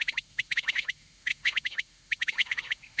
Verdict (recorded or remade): remade